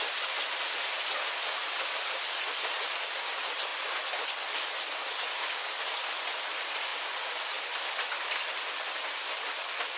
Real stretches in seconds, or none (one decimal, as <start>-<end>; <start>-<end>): 0.0-10.0